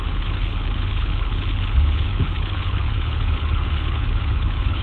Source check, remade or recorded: remade